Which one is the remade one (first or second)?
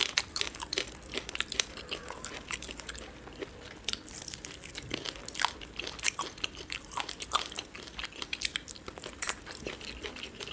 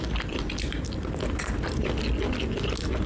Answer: first